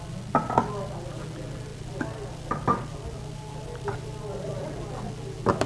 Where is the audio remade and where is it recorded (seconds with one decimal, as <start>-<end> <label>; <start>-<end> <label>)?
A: 0.0-1.7 recorded; 1.7-5.1 remade; 5.1-5.7 recorded